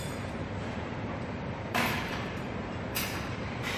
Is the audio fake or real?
fake